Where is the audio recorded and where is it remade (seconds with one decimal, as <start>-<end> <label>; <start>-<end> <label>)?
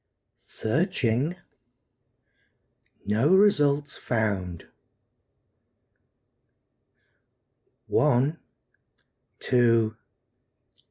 0.0-0.8 recorded; 0.8-2.0 remade; 2.0-10.9 recorded